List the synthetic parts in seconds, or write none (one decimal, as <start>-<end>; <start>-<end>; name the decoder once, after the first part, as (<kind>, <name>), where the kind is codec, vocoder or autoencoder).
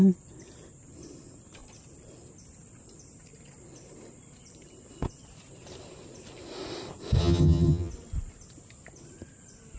7.2-7.9 (vocoder, HiFi-GAN)